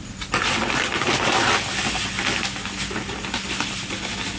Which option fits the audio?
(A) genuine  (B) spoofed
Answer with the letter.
A